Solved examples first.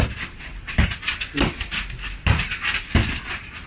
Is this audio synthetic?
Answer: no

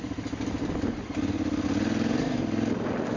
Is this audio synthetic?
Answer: no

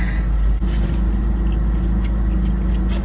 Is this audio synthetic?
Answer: no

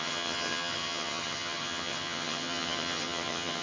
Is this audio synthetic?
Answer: yes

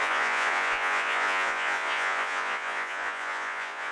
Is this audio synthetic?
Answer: yes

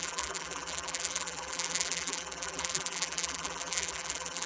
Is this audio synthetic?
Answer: yes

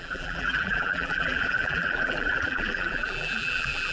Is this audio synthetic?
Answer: yes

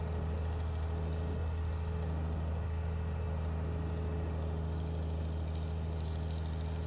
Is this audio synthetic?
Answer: no